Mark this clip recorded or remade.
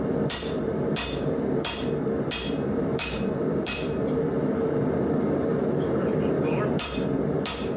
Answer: remade